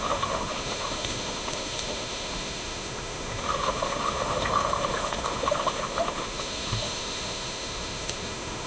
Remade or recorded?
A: remade